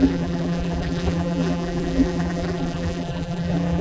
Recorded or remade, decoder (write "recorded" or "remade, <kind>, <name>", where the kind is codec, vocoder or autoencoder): remade, vocoder, BigVGAN v2